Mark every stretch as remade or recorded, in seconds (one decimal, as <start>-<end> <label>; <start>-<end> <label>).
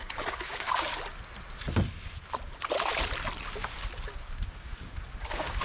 0.0-0.9 remade; 0.9-4.3 recorded; 4.3-5.6 remade